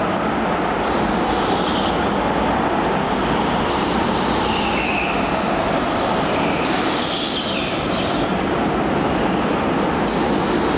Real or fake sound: real